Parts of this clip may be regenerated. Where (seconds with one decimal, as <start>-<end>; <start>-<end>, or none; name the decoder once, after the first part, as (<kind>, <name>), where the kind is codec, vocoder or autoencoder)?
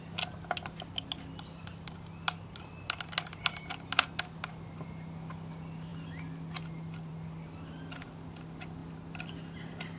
8.8-9.4 (vocoder, BigVGAN v2)